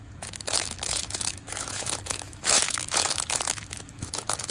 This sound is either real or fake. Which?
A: fake